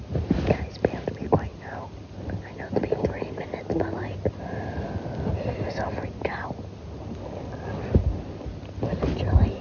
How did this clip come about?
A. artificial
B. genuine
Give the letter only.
B